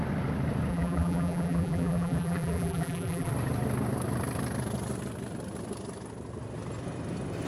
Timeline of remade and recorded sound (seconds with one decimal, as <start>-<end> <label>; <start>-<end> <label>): 0.0-0.7 recorded; 0.7-3.3 remade; 3.3-7.5 recorded